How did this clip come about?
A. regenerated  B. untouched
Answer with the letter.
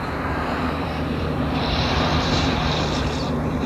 A